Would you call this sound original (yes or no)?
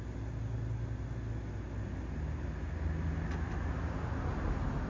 yes